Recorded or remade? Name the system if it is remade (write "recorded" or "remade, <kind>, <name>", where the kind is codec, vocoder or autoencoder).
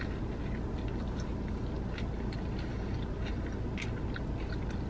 recorded